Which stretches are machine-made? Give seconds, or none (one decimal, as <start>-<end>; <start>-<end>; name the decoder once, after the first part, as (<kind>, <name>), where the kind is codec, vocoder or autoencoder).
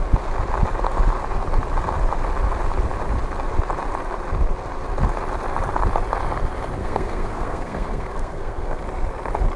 6.8-8.8 (codec, SNAC)